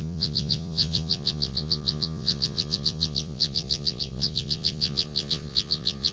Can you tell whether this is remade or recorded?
remade